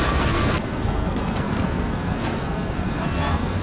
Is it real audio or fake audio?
fake